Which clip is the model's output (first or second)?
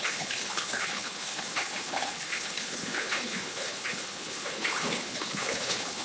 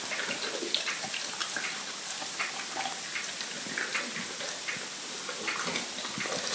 first